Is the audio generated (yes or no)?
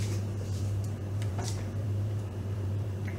yes